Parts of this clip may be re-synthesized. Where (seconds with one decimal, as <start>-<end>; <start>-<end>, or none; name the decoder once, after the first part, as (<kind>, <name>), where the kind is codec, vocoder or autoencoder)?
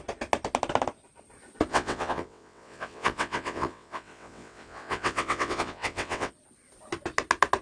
1.7-6.3 (vocoder, WaveNeXt)